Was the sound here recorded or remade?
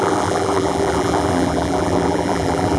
remade